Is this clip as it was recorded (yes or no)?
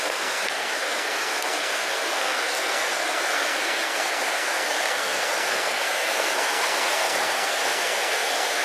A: no